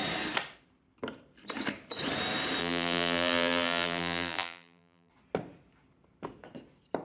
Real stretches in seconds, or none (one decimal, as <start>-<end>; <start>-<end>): 0.0-2.6; 5.1-7.0